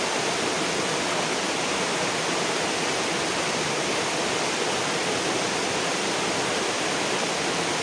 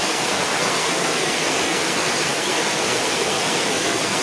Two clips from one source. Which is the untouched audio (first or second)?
first